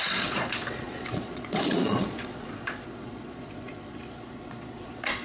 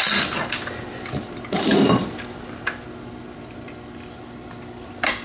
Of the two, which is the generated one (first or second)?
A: first